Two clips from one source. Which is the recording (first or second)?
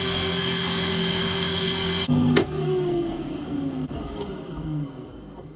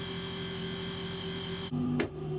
second